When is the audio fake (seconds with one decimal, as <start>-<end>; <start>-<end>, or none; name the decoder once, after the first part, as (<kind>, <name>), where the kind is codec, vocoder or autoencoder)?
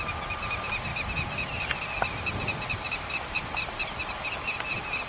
0.9-4.0 (vocoder, BigVGAN v2)